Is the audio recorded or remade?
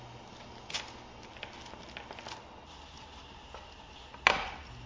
recorded